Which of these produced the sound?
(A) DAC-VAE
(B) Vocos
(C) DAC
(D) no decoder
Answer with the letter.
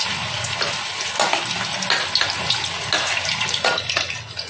D